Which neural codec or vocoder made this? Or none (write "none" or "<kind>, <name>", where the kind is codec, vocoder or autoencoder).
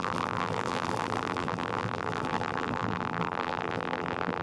vocoder, BigVGAN v2